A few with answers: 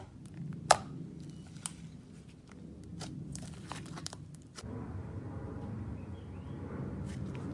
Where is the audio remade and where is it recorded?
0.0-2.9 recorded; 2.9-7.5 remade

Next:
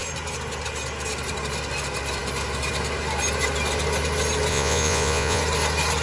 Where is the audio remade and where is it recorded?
0.0-4.5 recorded; 4.5-5.4 remade; 5.4-6.0 recorded